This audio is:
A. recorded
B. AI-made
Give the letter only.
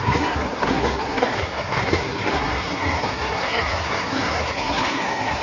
B